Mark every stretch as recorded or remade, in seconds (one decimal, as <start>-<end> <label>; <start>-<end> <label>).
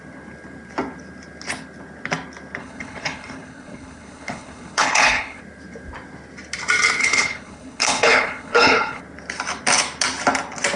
0.0-2.6 recorded; 2.6-5.4 remade; 5.4-7.0 recorded; 7.0-9.0 remade; 9.0-10.8 recorded